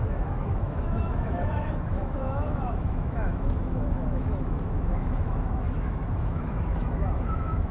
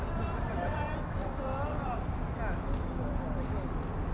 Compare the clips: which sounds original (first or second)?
second